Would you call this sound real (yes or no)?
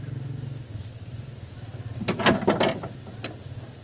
yes